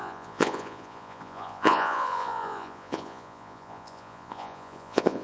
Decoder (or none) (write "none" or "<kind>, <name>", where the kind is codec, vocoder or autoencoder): vocoder, Vocos